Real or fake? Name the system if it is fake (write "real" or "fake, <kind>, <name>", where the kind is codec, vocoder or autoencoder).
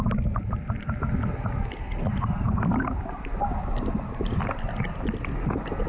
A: real